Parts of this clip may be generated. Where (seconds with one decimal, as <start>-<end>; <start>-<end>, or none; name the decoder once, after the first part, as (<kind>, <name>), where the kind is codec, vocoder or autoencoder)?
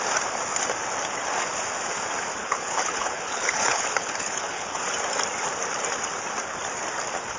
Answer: 2.4-4.8 (codec, HILCodec)